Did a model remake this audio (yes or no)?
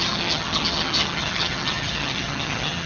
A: yes